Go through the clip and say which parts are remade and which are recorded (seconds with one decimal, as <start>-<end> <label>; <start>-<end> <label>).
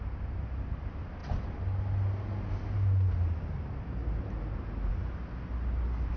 0.0-6.2 recorded